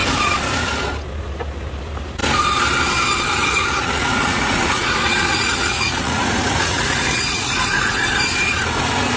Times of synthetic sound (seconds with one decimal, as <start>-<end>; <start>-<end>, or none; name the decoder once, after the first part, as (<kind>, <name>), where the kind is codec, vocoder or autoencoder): 3.4-8.1 (vocoder, Vocos)